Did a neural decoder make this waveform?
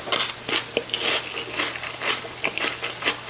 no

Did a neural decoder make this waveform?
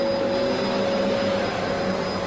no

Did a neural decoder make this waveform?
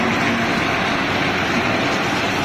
no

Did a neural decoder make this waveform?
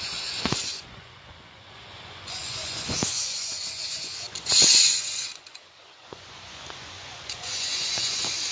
yes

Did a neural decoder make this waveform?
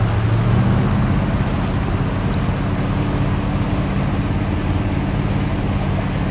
no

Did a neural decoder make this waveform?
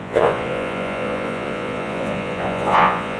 yes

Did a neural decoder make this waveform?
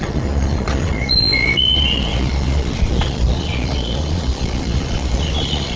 yes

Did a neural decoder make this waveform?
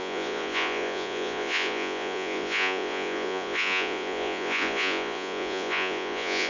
yes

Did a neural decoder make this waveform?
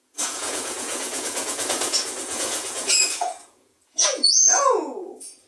yes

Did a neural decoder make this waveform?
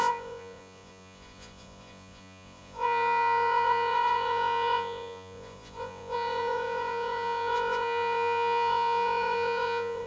yes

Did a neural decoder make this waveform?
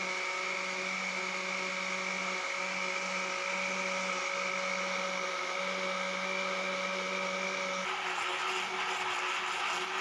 no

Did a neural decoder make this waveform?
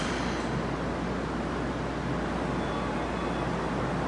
no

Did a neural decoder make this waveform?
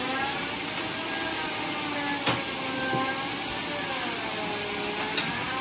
no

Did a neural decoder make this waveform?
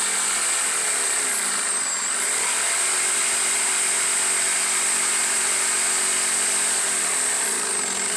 no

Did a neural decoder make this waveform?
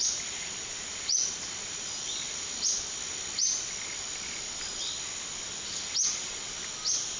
no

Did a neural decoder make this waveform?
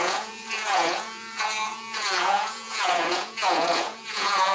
yes